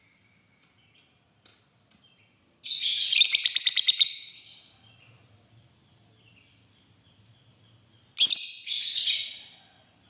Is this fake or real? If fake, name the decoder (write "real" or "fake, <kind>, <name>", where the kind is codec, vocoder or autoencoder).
real